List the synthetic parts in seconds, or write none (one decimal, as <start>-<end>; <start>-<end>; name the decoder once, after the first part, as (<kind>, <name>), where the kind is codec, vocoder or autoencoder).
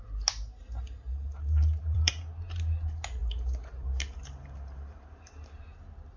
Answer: 1.1-2.1 (vocoder, BigVGAN v2); 3.2-5.6